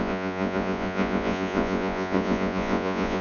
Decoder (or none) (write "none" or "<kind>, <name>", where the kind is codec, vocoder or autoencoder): vocoder, Vocos